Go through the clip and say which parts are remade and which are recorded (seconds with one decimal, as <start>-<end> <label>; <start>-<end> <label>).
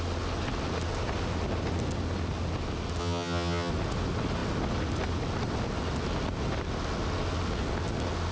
0.0-3.0 recorded; 3.0-3.7 remade; 3.7-8.3 recorded